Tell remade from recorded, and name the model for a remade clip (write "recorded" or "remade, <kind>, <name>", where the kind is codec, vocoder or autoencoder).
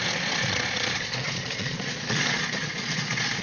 remade, vocoder, Vocos